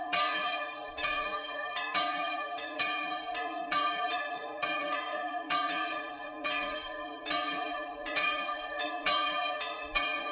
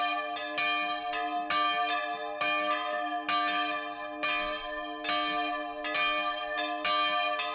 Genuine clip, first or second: second